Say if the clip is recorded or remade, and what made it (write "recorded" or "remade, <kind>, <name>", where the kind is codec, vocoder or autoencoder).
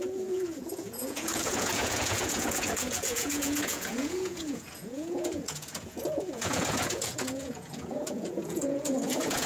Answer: remade, vocoder, Vocos